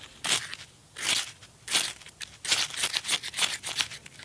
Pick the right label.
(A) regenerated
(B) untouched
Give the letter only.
B